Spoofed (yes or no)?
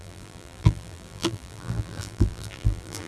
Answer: yes